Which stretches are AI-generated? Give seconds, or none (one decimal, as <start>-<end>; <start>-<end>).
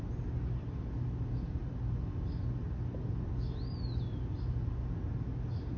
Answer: none